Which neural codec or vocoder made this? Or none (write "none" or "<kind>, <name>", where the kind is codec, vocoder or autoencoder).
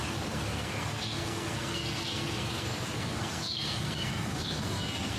codec, SNAC